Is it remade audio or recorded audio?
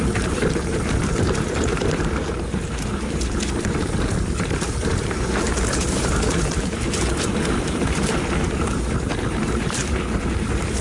remade